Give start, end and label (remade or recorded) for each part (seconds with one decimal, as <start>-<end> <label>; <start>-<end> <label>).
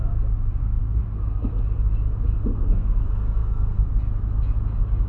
0.0-0.6 recorded; 0.6-1.5 remade; 1.5-2.5 recorded; 2.5-3.9 remade; 3.9-5.1 recorded